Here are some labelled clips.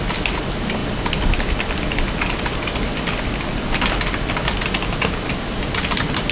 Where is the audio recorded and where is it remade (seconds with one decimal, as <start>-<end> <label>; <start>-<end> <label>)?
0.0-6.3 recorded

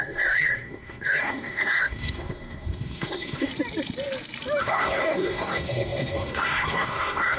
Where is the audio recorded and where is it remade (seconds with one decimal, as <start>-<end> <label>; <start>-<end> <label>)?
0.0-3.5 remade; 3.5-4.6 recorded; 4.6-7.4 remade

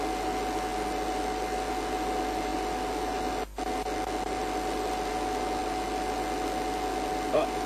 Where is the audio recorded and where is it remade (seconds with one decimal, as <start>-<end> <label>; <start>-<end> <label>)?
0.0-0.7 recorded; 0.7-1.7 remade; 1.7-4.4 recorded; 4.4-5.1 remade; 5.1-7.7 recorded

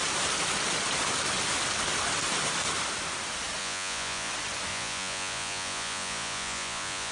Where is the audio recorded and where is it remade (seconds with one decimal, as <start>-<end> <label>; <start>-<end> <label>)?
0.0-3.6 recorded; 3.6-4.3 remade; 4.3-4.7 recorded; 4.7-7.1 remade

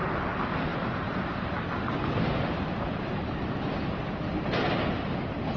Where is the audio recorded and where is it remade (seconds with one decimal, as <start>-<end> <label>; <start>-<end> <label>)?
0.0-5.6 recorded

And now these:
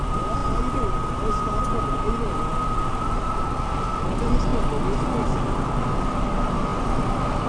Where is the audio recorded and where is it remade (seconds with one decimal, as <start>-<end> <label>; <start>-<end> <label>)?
0.0-7.5 recorded

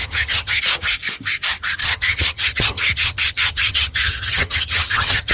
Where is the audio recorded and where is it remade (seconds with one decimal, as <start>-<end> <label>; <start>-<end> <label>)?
0.0-0.6 remade; 0.6-1.8 recorded; 1.8-5.3 remade